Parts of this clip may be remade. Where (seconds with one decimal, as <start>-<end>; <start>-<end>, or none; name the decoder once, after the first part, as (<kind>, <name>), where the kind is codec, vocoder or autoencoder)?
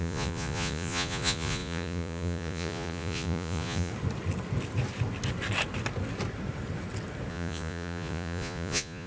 0.0-3.9 (vocoder, Vocos); 7.3-9.1